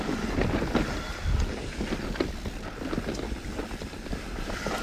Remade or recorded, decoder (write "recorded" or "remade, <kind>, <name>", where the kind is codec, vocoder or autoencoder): recorded